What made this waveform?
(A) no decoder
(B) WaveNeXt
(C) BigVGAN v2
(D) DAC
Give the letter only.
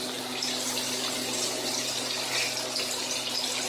A